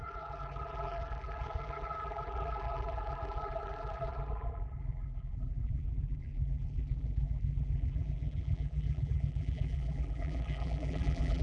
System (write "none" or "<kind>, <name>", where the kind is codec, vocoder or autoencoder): vocoder, BigVGAN v2